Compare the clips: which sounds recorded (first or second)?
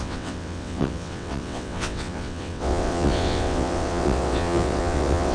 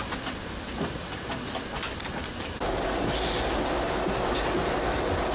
second